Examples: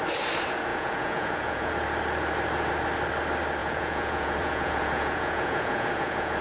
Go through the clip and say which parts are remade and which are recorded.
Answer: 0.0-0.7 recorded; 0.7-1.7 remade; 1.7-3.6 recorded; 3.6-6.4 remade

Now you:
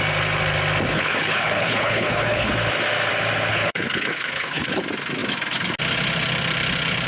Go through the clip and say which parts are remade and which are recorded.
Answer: 0.0-0.9 recorded; 0.9-2.5 remade; 2.5-3.5 recorded; 3.5-4.8 remade; 4.8-7.1 recorded

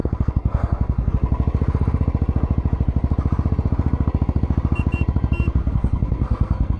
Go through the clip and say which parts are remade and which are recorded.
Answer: 0.0-1.1 remade; 1.1-5.6 recorded; 5.6-6.8 remade

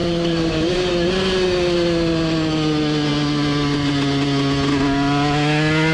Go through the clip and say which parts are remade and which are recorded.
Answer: 0.0-0.9 remade; 0.9-5.9 recorded